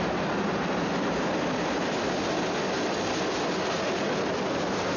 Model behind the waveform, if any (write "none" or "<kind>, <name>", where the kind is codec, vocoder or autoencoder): none